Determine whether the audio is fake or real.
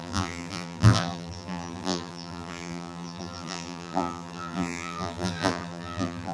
fake